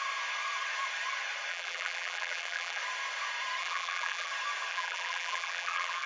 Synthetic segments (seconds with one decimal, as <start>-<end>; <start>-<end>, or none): 1.5-2.8; 3.6-4.3; 4.7-6.1